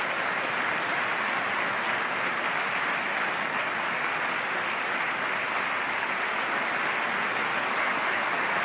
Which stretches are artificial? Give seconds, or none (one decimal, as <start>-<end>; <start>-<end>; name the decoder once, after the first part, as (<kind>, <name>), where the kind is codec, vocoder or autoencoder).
7.5-8.6 (codec, DAC)